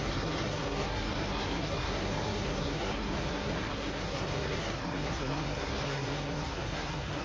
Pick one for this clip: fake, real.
fake